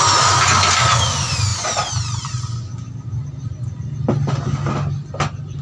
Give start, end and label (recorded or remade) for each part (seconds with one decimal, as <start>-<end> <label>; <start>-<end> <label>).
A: 0.0-1.5 recorded; 1.5-2.4 remade; 2.4-5.6 recorded